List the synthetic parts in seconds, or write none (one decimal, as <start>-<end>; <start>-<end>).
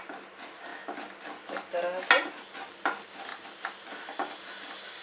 none